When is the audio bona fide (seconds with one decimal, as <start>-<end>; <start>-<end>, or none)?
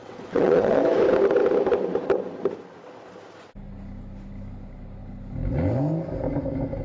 0.8-6.8